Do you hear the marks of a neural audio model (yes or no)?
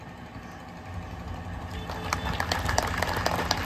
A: no